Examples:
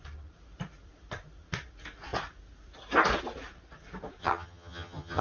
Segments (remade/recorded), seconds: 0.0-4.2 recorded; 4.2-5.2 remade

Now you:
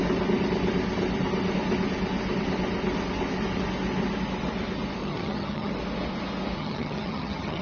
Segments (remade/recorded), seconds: 0.0-5.0 recorded; 5.0-5.7 remade; 5.7-6.6 recorded; 6.6-7.6 remade

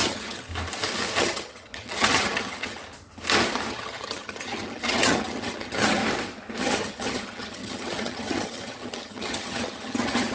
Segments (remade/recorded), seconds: 0.0-0.5 remade; 0.5-1.2 recorded; 1.2-2.8 remade; 2.8-3.7 recorded; 3.7-6.0 remade; 6.0-6.6 recorded; 6.6-10.3 remade

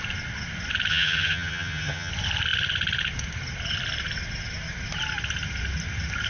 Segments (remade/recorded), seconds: 0.0-0.9 recorded; 0.9-2.1 remade; 2.1-6.3 recorded

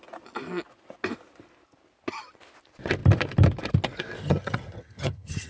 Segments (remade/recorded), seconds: 0.0-4.2 recorded; 4.2-5.5 remade